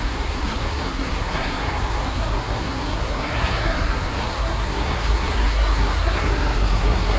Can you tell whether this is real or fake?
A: fake